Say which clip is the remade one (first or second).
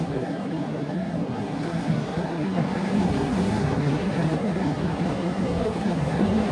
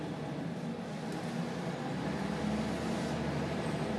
first